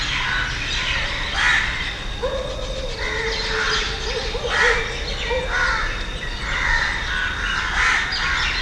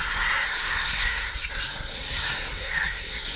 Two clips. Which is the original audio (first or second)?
first